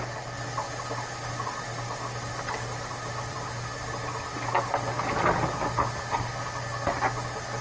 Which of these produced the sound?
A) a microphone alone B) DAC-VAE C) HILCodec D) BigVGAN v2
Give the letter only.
A